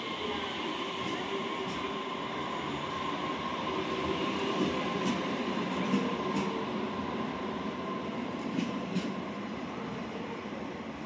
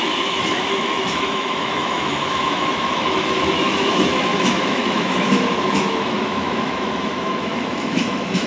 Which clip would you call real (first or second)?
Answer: first